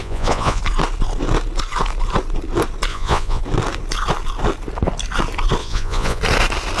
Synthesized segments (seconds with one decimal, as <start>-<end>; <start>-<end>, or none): 0.0-0.6; 2.9-3.4; 5.6-6.2